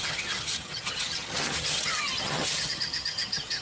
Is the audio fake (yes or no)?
yes